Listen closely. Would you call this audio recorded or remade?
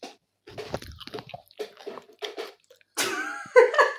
recorded